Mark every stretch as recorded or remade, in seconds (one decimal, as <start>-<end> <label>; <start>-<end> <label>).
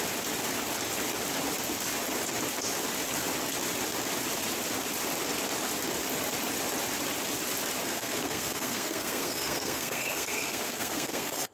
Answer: 0.0-7.8 recorded; 7.8-11.5 remade